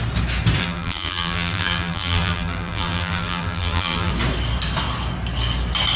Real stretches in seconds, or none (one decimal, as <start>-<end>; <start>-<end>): 0.0-0.6; 4.1-6.0